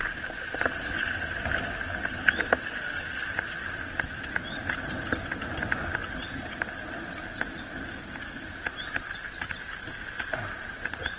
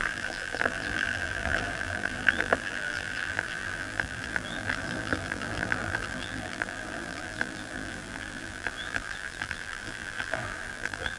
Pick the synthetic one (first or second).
second